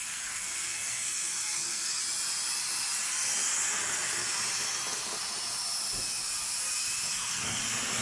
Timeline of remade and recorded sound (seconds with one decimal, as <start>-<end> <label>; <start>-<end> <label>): 0.0-2.0 remade; 2.0-7.1 recorded; 7.1-7.6 remade; 7.6-8.0 recorded